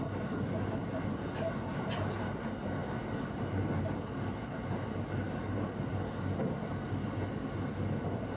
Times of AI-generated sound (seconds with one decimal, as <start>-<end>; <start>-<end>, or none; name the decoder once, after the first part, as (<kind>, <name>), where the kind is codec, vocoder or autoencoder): none